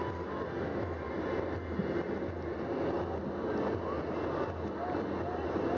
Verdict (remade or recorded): recorded